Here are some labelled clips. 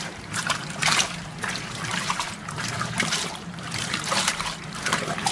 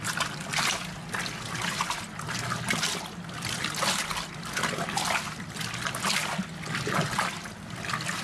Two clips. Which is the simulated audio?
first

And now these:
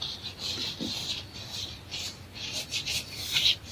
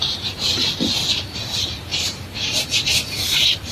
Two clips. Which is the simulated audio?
second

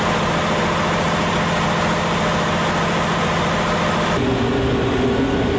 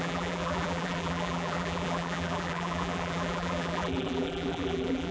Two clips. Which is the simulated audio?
second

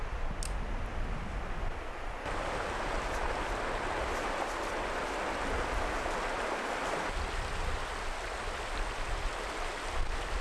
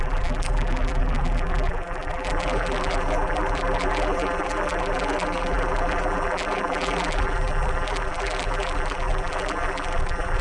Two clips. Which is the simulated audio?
second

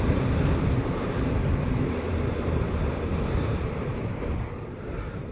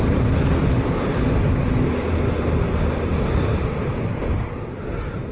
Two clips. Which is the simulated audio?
first